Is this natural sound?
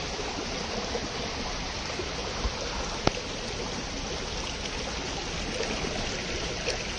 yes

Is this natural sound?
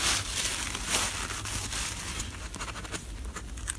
yes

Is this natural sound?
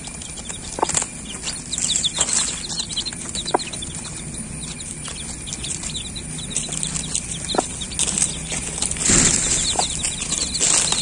yes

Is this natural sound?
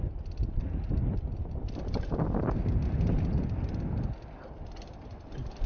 yes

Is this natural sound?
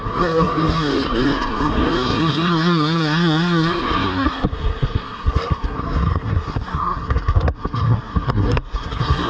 no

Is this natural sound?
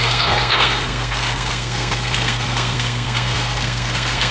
no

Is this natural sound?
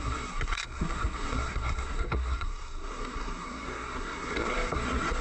no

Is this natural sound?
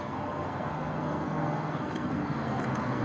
no